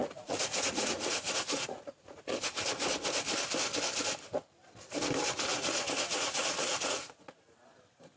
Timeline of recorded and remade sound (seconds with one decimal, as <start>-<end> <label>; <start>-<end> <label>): 0.0-2.3 remade; 2.3-5.5 recorded; 5.5-7.4 remade; 7.4-8.2 recorded